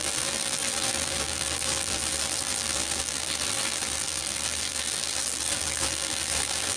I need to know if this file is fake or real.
fake